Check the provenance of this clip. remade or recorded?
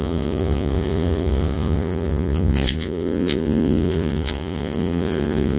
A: remade